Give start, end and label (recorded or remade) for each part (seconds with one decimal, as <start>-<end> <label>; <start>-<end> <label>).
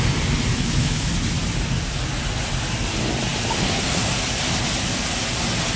0.0-0.5 recorded; 0.5-1.1 remade; 1.1-5.8 recorded